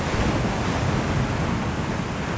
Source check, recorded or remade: recorded